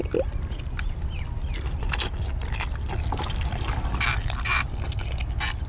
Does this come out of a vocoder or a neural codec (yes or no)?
no